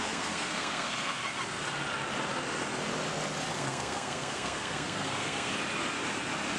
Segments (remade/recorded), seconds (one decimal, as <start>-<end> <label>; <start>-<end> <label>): 0.0-1.2 remade; 1.2-3.5 recorded; 3.5-5.5 remade; 5.5-6.6 recorded